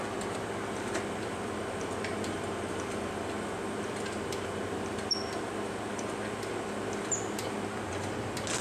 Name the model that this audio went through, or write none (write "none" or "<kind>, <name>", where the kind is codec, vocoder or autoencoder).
none